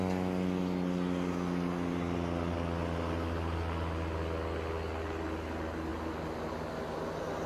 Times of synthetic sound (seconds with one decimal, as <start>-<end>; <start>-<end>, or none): none